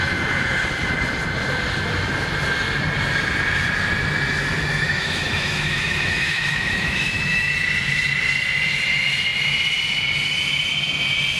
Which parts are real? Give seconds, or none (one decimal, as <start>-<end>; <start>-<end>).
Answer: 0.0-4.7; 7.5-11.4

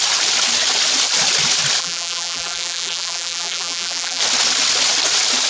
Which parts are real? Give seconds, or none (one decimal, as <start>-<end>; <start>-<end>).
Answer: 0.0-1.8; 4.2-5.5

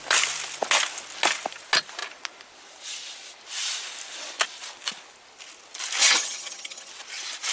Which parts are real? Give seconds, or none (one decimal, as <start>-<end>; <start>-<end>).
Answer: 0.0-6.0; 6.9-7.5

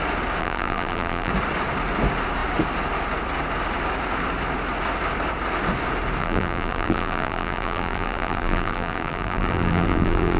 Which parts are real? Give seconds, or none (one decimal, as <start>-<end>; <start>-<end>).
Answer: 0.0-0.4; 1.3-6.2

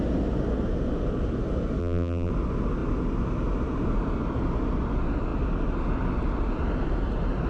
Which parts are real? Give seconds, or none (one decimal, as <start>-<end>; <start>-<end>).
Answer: 0.0-1.8; 2.3-7.5

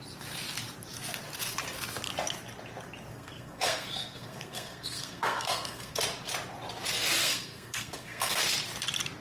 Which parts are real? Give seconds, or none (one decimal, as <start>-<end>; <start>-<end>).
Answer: 0.0-3.1; 6.0-7.2; 8.4-9.2

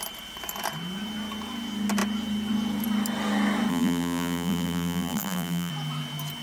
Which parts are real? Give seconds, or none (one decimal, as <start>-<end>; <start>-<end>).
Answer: 0.0-3.7; 5.7-6.4